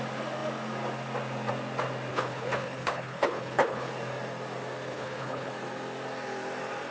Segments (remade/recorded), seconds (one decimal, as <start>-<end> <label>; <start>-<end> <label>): 0.0-2.1 recorded; 2.1-3.9 remade; 3.9-4.9 recorded; 4.9-5.5 remade; 5.5-6.9 recorded